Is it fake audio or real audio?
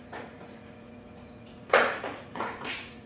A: fake